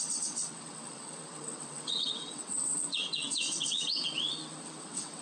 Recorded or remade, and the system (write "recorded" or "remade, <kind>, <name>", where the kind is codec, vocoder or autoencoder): remade, vocoder, WaveNeXt